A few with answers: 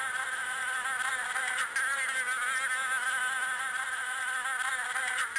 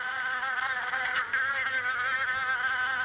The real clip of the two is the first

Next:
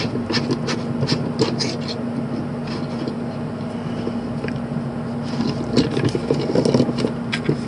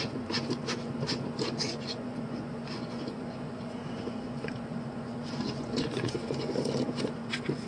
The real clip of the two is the first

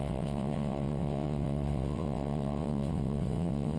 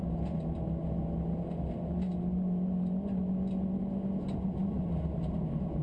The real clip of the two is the second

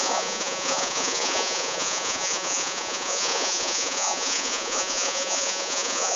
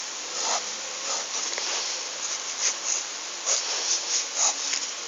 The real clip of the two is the second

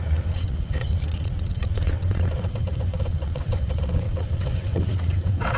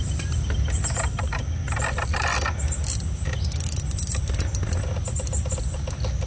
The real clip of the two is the second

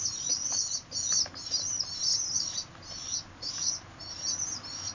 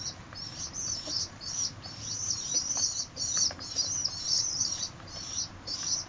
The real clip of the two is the first